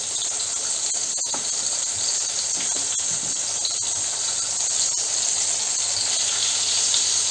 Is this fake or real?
real